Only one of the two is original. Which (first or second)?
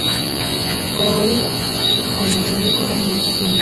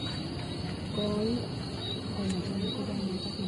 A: second